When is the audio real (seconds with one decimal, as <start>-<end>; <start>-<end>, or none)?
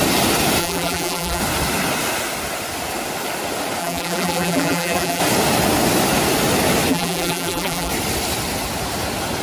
0.0-0.6; 1.4-3.8; 5.2-6.9; 7.9-9.4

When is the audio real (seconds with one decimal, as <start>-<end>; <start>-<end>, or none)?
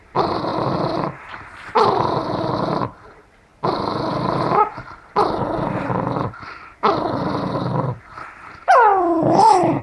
0.0-8.9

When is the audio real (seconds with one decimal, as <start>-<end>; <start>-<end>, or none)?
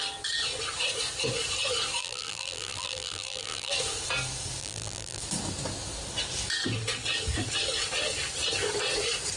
0.0-2.0; 3.7-4.6; 5.2-9.4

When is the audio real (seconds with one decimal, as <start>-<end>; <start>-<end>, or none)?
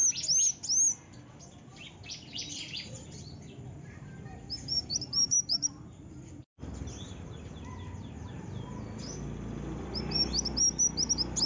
0.0-1.7; 6.5-11.5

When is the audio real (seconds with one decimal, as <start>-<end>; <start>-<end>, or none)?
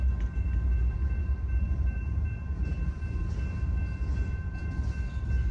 0.0-1.2; 3.2-4.1; 4.7-5.5